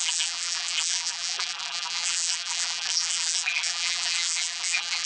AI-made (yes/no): yes